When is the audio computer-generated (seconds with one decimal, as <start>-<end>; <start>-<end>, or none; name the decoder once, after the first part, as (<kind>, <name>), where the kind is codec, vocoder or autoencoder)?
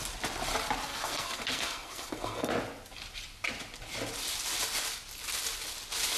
0.9-2.5 (codec, SNAC)